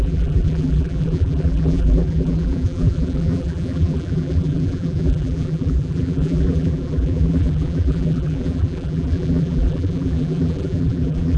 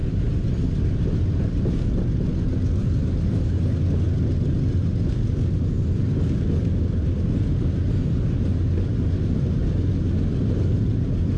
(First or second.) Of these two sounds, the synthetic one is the first